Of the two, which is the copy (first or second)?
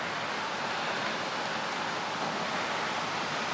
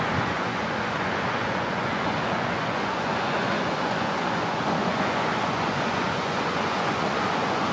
second